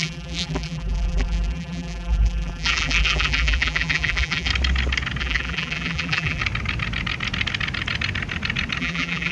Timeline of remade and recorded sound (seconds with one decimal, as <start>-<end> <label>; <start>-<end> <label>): 0.0-4.5 remade; 4.5-5.2 recorded; 5.2-6.4 remade; 6.4-8.8 recorded; 8.8-9.3 remade